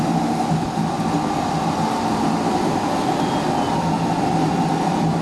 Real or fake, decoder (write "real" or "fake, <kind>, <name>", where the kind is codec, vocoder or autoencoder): real